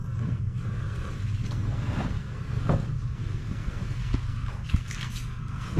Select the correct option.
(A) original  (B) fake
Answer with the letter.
B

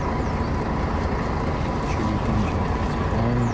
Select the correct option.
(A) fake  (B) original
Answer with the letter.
B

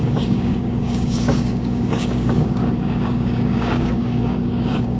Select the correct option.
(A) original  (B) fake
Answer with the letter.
B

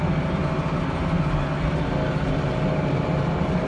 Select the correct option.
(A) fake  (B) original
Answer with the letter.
B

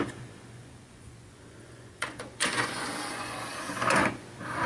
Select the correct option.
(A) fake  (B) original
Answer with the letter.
A